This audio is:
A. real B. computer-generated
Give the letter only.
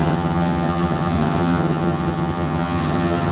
B